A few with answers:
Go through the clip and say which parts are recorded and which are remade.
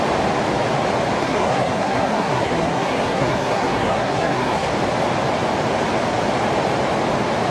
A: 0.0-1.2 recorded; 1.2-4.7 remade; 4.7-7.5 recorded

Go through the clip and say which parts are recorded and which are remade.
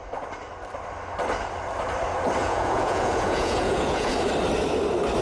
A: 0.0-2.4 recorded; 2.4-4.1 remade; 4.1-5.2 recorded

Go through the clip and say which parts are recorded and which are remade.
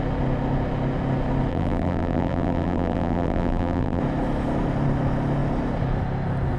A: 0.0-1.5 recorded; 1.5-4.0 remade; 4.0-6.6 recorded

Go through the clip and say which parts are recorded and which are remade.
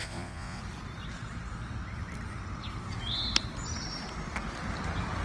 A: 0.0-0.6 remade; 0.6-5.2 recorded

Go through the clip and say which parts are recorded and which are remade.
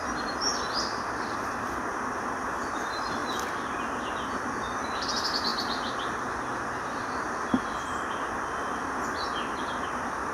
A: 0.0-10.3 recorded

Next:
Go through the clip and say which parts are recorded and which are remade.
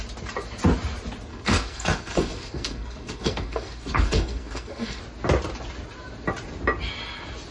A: 0.0-1.3 recorded; 1.3-5.0 remade; 5.0-7.5 recorded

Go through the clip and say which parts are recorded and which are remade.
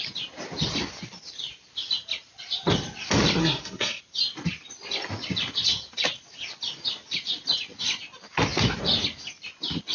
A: 0.0-3.4 recorded; 3.4-4.0 remade; 4.0-9.9 recorded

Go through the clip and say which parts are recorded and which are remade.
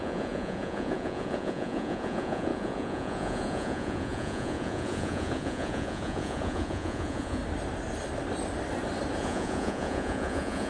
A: 0.0-7.4 remade; 7.4-9.2 recorded; 9.2-10.7 remade